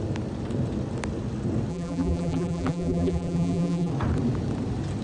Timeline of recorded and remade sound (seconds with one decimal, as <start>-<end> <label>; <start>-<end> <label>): 0.0-1.7 recorded; 1.7-3.9 remade; 3.9-5.0 recorded